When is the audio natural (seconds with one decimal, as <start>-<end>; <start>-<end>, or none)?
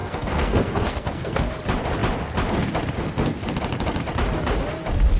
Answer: 1.5-5.2